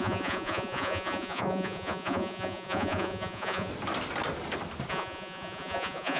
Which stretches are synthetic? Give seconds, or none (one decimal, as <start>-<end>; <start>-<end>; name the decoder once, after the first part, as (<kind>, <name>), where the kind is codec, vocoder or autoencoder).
0.0-3.7 (vocoder, Vocos); 4.9-6.2